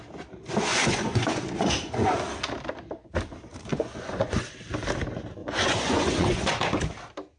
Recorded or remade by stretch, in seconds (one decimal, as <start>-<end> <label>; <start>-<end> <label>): 0.0-0.7 recorded; 0.7-2.1 remade; 2.1-3.7 recorded; 3.7-4.4 remade; 4.4-5.4 recorded; 5.4-6.5 remade; 6.5-7.4 recorded